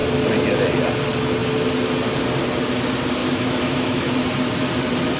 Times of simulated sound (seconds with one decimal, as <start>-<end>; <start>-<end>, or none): 3.2-4.1